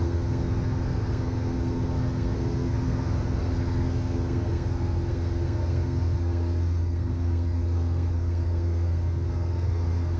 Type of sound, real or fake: fake